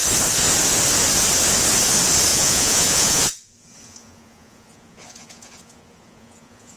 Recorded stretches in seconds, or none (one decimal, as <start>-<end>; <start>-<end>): 0.0-2.3